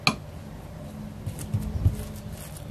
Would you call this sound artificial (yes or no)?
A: no